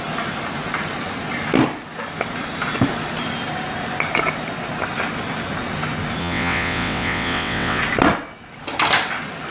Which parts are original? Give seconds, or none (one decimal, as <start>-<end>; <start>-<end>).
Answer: 0.0-6.2; 7.8-9.5